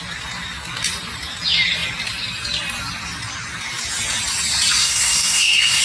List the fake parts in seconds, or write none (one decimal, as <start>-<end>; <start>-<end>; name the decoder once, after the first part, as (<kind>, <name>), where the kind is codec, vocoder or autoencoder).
4.8-5.8 (codec, SNAC)